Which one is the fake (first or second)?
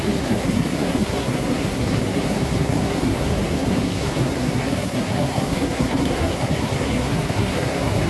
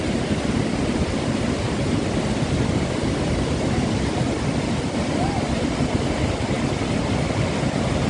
first